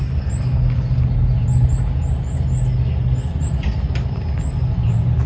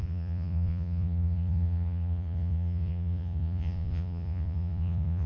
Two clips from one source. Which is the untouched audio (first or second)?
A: first